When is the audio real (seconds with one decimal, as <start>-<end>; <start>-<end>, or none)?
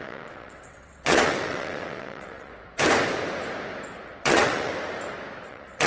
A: 2.5-4.2; 4.7-5.5